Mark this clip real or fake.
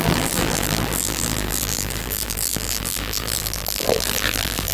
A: fake